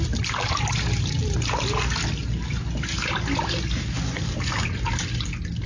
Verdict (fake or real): real